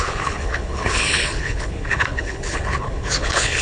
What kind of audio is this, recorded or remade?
remade